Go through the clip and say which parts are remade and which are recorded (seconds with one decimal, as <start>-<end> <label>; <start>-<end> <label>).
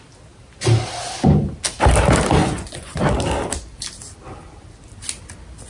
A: 0.0-2.4 recorded; 2.4-3.0 remade; 3.0-5.7 recorded